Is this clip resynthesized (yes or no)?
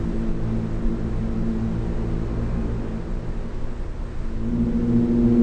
no